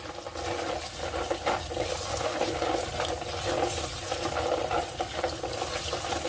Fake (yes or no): no